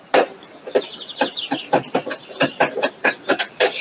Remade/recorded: recorded